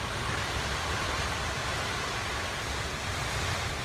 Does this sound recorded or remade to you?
recorded